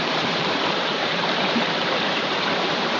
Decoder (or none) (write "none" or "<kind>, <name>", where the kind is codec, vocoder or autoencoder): vocoder, BigVGAN v2